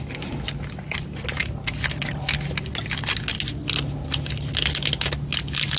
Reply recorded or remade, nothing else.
recorded